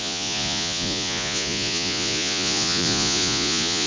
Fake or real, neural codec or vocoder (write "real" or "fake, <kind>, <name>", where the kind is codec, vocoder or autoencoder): fake, vocoder, Vocos